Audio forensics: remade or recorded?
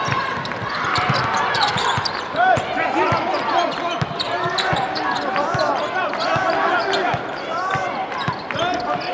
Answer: recorded